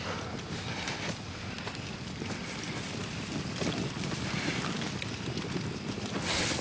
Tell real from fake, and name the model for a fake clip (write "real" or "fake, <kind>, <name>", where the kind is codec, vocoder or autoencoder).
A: real